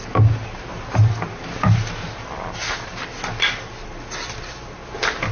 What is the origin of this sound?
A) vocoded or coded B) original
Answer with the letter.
B